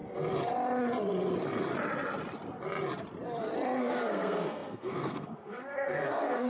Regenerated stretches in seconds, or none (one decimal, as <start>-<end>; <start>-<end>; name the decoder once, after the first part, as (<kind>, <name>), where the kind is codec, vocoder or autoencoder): 3.8-6.5 (codec, SNAC)

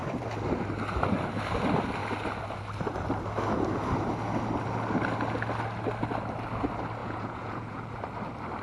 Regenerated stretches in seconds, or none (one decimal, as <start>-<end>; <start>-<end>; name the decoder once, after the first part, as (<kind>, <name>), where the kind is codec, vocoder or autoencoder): 7.0-7.8 (vocoder, Vocos)

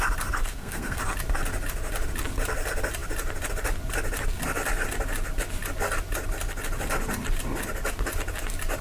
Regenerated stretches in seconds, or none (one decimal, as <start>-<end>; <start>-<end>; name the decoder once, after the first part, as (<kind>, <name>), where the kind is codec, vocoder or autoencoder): 0.4-1.0 (codec, SNAC)

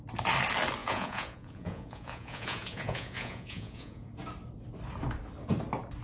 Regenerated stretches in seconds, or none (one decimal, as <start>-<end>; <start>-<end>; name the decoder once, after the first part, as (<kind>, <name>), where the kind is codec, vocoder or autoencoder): 0.8-4.1 (vocoder, Vocos)

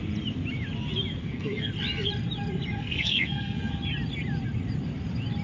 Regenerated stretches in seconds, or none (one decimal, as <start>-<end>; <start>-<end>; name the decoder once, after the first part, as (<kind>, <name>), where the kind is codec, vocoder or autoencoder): 1.2-1.7 (codec, SNAC); 2.8-3.7

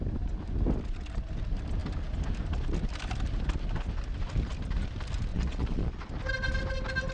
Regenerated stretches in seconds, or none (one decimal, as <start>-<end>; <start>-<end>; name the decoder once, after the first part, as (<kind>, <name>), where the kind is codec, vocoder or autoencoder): 5.3-6.1 (vocoder, Vocos)

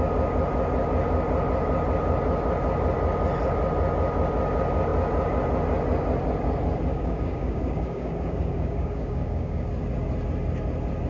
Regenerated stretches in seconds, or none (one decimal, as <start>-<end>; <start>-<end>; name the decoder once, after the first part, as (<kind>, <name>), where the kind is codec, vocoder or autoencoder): 6.9-9.7 (codec, DAC)